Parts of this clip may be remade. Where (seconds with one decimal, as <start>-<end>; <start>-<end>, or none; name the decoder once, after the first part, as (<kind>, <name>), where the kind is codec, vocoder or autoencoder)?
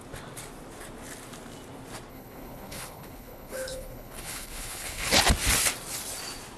2.1-5.1 (codec, HILCodec)